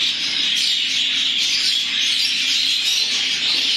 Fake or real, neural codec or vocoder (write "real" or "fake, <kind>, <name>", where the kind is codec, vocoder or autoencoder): fake, vocoder, BigVGAN v2